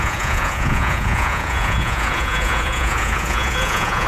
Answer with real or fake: fake